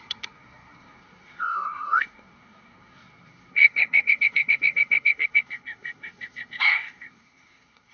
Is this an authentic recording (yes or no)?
no